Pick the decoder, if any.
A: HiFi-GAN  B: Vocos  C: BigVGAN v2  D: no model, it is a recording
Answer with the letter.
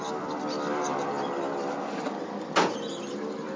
D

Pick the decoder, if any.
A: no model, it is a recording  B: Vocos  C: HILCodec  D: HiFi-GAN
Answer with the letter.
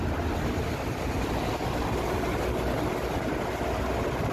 A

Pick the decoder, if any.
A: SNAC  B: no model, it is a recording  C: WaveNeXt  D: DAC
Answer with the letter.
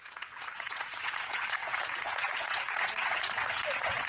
C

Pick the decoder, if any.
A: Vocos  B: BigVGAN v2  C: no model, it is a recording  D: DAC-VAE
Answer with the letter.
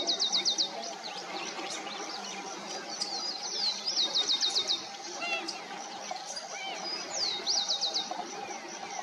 C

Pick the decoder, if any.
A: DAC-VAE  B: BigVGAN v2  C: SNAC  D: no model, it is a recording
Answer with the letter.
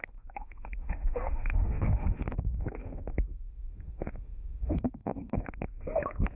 A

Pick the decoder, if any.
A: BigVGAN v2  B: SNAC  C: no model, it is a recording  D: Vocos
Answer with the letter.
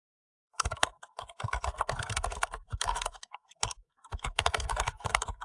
B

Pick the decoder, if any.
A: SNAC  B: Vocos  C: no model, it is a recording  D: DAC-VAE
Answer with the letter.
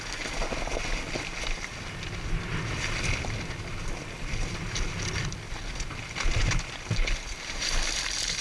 C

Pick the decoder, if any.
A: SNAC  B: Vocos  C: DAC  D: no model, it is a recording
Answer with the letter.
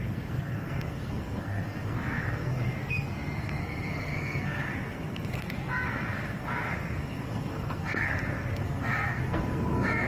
A